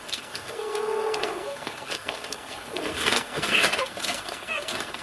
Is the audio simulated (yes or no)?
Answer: yes